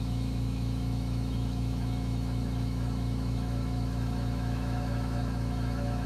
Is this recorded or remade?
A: remade